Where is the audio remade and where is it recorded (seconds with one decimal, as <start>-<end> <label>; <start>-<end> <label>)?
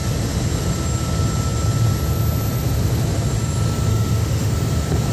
0.0-3.9 recorded; 3.9-4.5 remade; 4.5-5.1 recorded